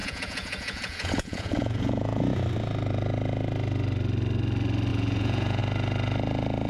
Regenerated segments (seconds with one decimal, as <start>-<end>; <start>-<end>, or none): 0.0-2.2; 4.9-5.6